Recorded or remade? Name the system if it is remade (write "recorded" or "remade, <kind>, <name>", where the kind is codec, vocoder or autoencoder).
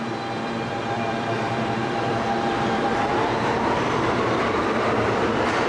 remade, vocoder, BigVGAN v2